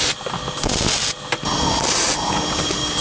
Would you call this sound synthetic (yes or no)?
no